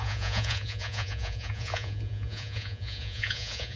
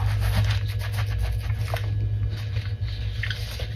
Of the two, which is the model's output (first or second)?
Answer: first